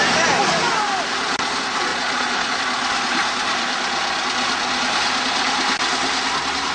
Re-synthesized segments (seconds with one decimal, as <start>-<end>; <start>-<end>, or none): 1.9-2.6

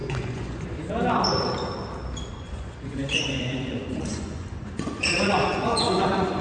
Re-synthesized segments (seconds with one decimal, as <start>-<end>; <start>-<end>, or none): 0.0-0.9; 2.3-6.4

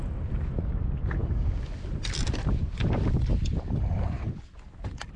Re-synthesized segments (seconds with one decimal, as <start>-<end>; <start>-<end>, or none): none

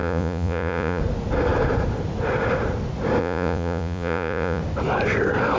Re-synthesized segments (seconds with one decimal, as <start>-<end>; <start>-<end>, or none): 0.0-1.0; 3.2-4.6

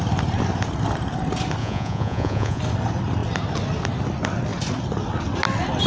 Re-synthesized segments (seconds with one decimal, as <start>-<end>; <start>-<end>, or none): 1.6-2.6

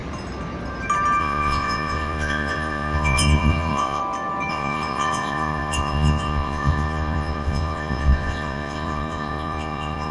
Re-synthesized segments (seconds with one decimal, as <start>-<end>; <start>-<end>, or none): 1.2-4.0; 4.5-10.1

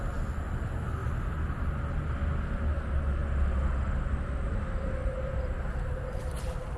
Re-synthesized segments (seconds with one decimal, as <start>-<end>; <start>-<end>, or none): none